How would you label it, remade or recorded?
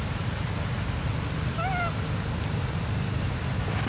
recorded